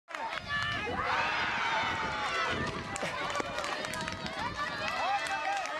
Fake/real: real